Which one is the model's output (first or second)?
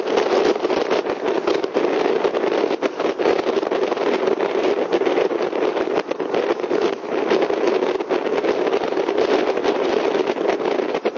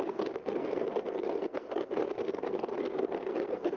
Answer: second